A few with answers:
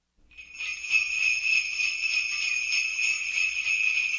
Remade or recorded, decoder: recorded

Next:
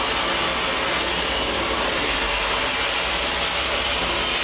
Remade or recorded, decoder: recorded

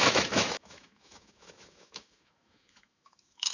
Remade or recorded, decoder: remade, autoencoder, DAC-VAE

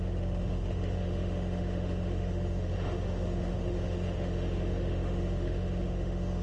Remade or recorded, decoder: remade, autoencoder, DAC-VAE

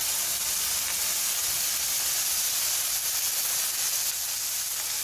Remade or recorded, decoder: recorded